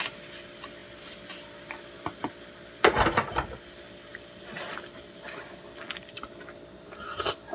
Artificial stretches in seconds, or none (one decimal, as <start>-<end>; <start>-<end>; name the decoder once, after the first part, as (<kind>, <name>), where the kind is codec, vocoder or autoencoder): none